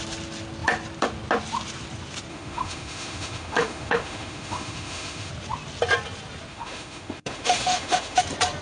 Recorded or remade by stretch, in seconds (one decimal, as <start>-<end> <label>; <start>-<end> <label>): 0.0-2.3 recorded; 2.3-5.3 remade; 5.3-6.5 recorded; 6.5-8.2 remade; 8.2-8.6 recorded